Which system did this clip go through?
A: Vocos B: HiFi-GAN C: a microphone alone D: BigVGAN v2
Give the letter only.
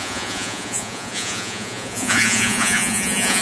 A